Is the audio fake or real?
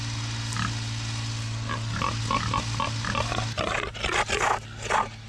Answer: real